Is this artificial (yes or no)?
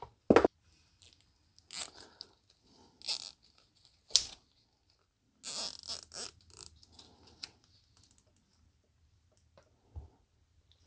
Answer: no